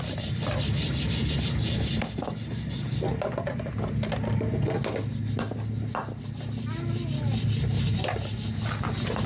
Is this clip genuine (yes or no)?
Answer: yes